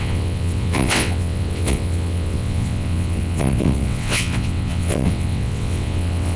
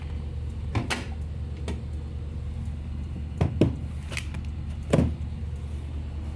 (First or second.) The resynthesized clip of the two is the first